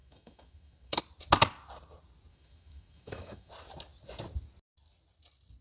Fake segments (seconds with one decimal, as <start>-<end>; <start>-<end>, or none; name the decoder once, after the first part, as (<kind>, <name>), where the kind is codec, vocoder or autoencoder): 0.0-1.0 (autoencoder, DAC-VAE); 2.3-3.5

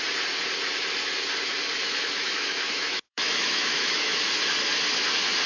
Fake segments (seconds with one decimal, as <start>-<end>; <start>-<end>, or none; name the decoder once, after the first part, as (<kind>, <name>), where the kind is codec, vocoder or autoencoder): 1.8-4.3 (autoencoder, DAC-VAE)

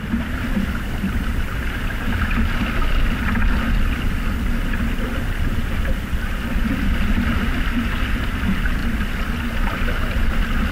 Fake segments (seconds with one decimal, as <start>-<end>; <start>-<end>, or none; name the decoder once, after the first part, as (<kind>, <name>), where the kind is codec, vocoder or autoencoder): none

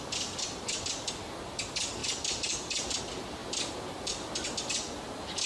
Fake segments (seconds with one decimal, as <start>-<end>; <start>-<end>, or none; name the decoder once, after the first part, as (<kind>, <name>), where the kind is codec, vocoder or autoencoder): none

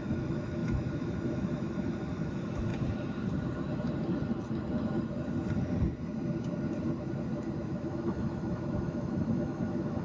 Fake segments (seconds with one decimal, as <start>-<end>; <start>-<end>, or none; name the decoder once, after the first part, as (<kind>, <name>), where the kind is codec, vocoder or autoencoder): 0.0-2.7 (autoencoder, DAC-VAE); 7.6-10.0

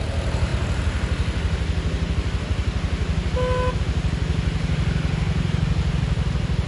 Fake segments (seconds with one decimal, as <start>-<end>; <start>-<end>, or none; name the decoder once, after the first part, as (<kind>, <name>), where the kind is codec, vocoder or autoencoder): none

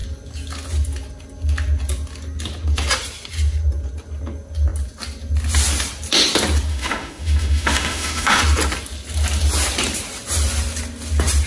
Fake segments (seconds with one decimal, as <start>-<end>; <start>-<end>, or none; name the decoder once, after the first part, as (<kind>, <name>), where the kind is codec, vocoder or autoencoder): 6.7-8.4 (autoencoder, DAC-VAE)

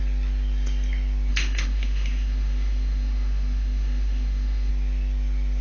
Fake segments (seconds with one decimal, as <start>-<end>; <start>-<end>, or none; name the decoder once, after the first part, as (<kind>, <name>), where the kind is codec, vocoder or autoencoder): 1.3-4.7 (autoencoder, DAC-VAE)